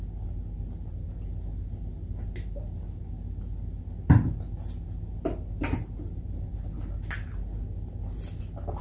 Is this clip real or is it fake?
real